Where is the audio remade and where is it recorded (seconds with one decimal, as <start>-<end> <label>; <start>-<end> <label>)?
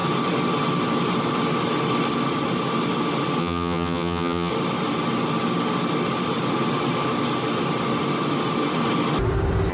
0.0-3.4 recorded; 3.4-4.5 remade; 4.5-9.7 recorded